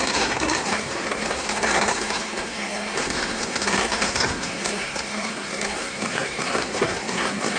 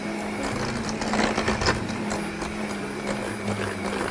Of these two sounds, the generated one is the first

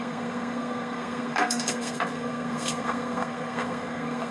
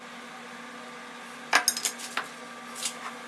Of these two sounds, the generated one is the first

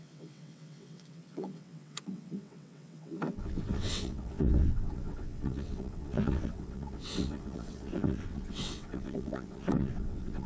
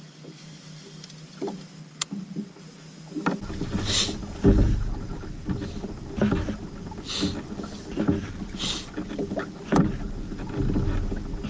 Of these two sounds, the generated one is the first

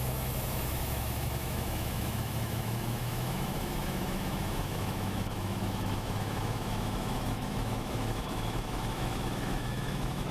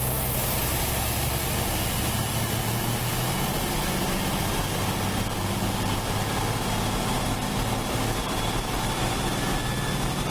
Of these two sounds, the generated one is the first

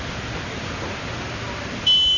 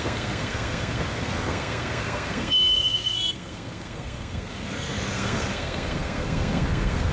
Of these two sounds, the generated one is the second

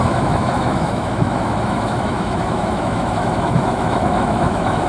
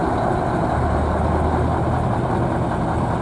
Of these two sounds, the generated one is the first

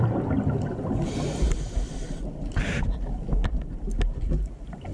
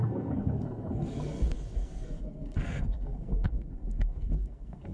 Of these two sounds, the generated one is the second